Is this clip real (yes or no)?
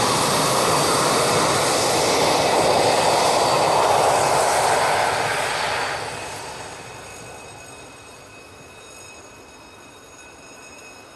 yes